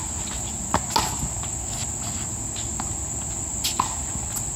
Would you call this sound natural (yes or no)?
yes